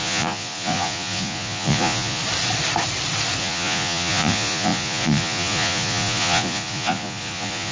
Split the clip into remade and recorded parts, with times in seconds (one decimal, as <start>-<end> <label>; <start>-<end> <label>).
0.0-2.2 remade; 2.2-3.4 recorded; 3.4-7.7 remade